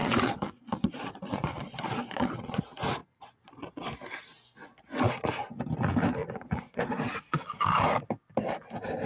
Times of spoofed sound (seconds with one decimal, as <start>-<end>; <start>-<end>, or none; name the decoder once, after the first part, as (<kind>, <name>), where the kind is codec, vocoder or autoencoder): 0.0-2.6 (vocoder, Vocos); 3.0-3.9; 6.2-6.8